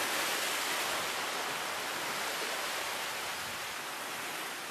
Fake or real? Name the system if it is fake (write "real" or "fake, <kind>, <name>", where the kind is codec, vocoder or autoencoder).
real